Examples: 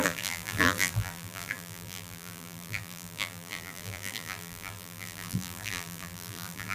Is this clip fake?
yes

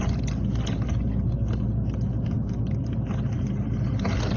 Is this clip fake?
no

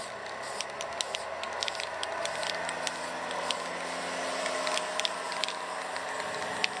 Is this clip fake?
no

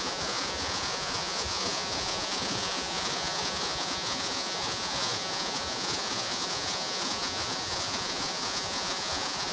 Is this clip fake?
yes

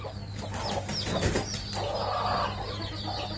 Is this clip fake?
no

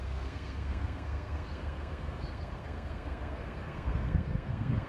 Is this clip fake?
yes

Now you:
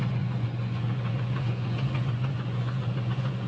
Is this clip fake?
yes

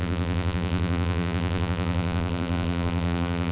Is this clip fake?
yes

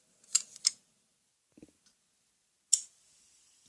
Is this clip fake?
no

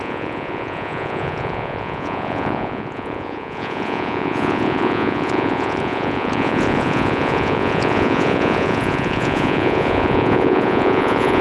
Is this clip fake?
yes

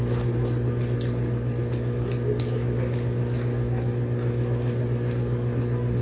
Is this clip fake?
no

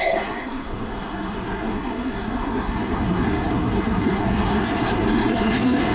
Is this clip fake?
yes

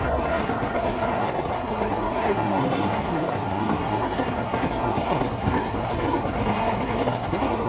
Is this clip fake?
yes